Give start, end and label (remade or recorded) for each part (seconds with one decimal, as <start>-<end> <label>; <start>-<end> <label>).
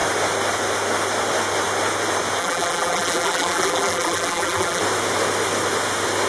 0.0-2.4 recorded; 2.4-4.8 remade; 4.8-6.3 recorded